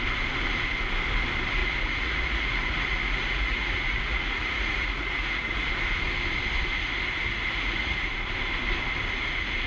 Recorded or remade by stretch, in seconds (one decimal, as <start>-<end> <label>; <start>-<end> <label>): 0.0-1.6 recorded; 1.6-5.7 remade; 5.7-7.3 recorded; 7.3-8.1 remade; 8.1-9.7 recorded